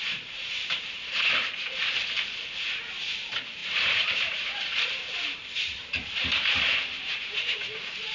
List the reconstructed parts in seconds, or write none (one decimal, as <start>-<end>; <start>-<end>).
0.0-1.8; 3.0-8.1